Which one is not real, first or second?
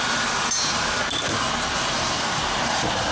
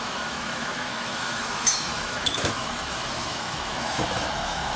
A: second